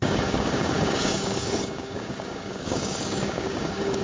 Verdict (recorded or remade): remade